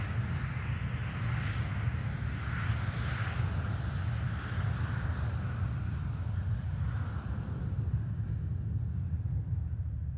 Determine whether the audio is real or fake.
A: real